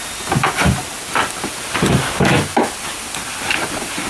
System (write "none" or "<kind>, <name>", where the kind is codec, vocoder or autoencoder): none